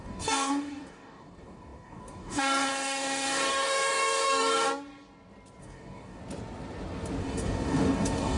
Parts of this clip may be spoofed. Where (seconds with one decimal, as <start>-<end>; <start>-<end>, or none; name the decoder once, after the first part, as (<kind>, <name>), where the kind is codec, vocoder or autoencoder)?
0.0-4.7 (codec, DAC); 5.6-6.2; 7.2-8.4